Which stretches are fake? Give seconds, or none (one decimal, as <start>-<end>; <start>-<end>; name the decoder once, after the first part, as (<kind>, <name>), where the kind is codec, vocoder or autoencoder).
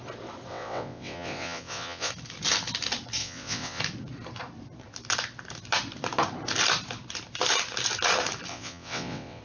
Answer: 0.5-2.1 (vocoder, WaveNeXt); 3.2-3.8; 8.5-9.4